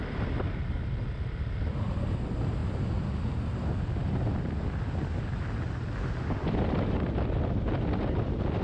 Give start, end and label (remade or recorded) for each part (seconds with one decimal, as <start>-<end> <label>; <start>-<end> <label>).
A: 0.0-8.6 recorded